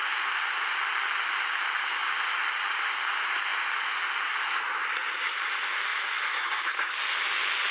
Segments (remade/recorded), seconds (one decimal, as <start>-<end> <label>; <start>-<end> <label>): 0.0-5.9 recorded; 5.9-6.5 remade; 6.5-7.7 recorded